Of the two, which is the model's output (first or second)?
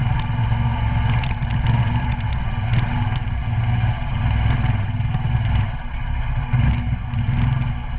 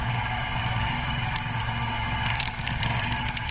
second